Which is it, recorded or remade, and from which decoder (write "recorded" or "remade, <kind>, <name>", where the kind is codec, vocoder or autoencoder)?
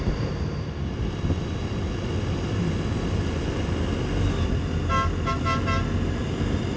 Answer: recorded